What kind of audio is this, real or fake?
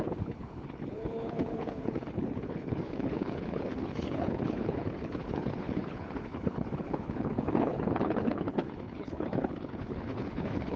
fake